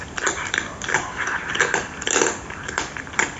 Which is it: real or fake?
real